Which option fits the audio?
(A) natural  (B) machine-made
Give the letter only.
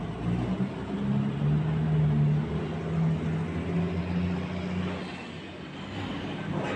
A